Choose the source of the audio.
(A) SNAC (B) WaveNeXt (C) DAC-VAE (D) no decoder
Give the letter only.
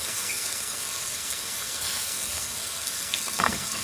A